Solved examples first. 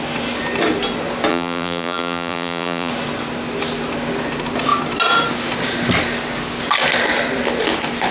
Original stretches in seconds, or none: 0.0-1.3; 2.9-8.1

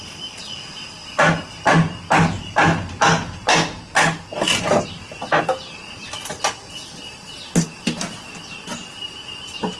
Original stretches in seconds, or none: 0.0-9.8

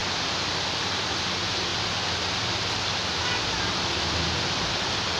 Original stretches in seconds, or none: 0.8-5.2